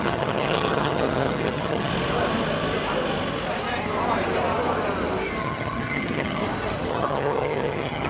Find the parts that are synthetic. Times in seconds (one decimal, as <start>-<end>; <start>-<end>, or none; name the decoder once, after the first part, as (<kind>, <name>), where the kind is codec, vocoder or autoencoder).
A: 0.0-1.9 (vocoder, HiFi-GAN); 5.4-6.4; 6.9-8.1